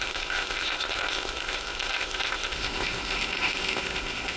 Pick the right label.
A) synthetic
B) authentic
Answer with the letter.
A